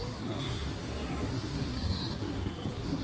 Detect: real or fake fake